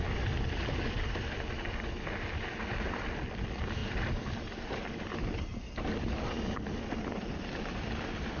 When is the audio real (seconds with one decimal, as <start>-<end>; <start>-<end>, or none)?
0.0-8.4